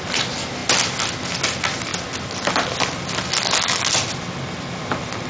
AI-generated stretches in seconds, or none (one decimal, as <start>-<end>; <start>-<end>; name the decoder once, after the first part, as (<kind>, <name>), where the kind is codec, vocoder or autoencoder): none